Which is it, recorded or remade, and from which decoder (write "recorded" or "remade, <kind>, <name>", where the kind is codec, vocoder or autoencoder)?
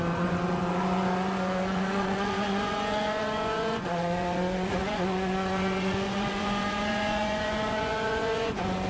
remade, vocoder, Vocos